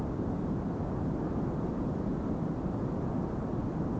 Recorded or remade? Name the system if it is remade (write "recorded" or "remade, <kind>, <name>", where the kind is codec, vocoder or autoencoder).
recorded